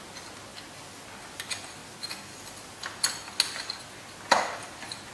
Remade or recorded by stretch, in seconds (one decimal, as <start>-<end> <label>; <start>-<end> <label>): 0.0-5.1 recorded